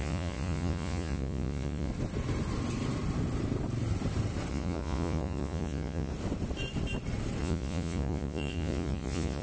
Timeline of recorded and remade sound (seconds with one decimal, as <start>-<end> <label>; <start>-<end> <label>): 0.0-1.9 remade; 1.9-4.5 recorded; 4.5-6.1 remade; 6.1-7.4 recorded; 7.4-9.4 remade